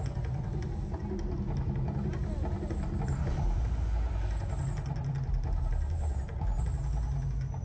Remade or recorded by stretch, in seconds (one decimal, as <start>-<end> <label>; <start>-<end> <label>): 0.0-7.6 recorded